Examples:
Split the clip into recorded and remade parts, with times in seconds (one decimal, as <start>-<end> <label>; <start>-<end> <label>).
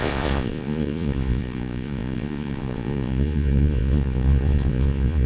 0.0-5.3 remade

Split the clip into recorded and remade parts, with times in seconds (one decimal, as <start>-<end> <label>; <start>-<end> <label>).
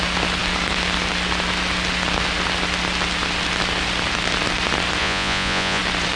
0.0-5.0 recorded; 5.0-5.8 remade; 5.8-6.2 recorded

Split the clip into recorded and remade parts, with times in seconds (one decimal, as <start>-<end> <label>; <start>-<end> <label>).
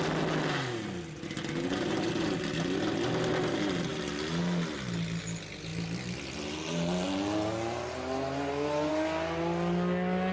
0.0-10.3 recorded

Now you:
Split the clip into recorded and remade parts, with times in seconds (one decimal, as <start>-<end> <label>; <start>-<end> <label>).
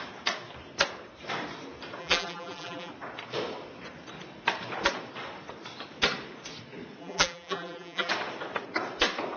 0.0-2.0 recorded; 2.0-2.9 remade; 2.9-7.0 recorded; 7.0-8.1 remade; 8.1-9.4 recorded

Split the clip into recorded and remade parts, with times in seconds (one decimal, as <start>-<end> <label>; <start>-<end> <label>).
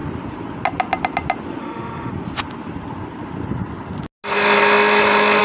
0.0-1.6 recorded; 1.6-2.1 remade; 2.1-5.4 recorded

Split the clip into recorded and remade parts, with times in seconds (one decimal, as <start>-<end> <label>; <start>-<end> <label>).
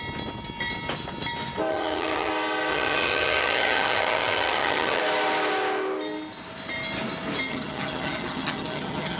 0.0-1.7 recorded; 1.7-2.3 remade; 2.3-2.7 recorded; 2.7-5.0 remade; 5.0-7.5 recorded; 7.5-9.2 remade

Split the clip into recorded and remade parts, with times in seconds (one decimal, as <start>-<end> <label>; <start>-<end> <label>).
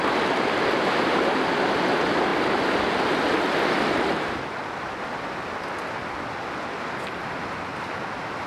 0.0-8.5 recorded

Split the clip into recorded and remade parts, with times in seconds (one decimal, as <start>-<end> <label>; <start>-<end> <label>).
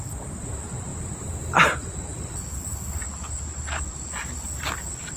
0.0-5.2 recorded